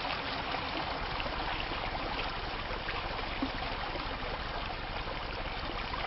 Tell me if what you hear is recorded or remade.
recorded